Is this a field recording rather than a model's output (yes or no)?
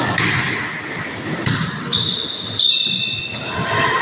yes